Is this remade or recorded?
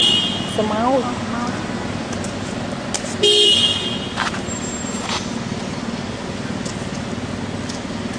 recorded